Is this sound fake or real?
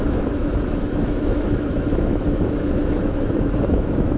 fake